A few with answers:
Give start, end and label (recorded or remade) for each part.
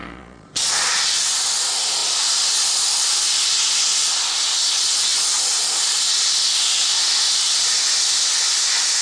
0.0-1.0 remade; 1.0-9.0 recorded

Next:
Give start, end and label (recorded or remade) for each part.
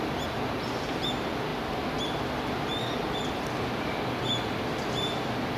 0.0-5.6 recorded